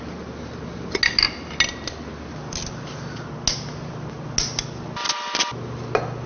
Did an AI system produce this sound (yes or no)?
no